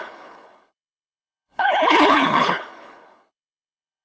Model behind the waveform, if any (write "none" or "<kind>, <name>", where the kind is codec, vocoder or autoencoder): codec, HILCodec